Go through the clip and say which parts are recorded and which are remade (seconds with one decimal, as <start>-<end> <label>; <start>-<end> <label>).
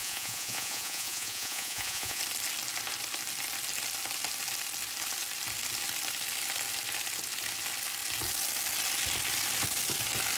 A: 0.0-2.2 remade; 2.2-10.4 recorded